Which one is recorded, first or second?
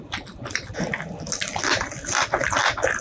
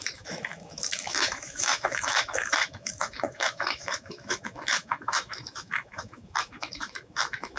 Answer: first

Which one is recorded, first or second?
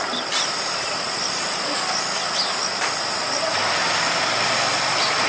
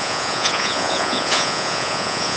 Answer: first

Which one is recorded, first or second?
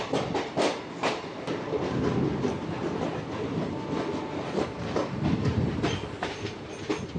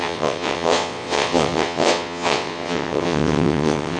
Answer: first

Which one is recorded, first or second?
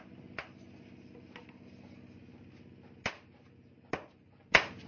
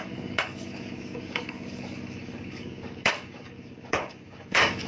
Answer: first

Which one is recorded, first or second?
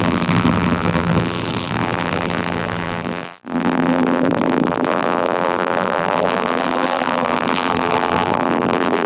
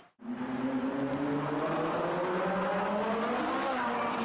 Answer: second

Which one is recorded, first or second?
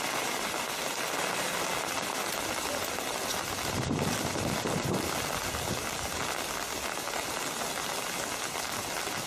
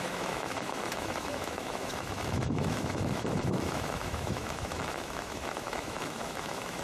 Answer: first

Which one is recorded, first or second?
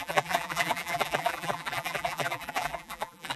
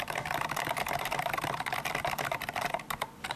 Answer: second